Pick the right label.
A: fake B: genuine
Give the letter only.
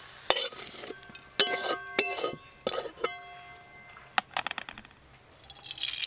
B